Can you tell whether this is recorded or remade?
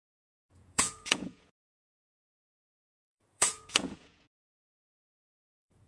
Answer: remade